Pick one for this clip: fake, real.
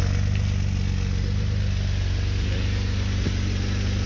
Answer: real